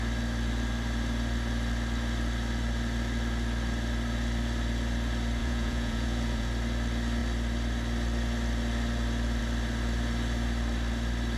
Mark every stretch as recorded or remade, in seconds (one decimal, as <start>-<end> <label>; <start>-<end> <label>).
0.0-5.4 recorded; 5.4-6.5 remade; 6.5-11.4 recorded